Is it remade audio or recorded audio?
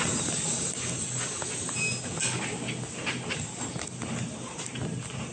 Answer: recorded